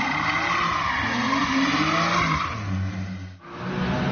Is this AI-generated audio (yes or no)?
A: no